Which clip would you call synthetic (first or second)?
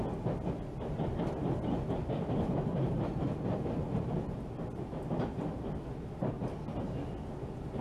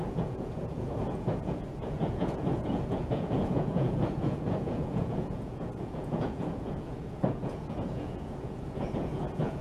second